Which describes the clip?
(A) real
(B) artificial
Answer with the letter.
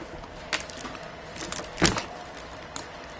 A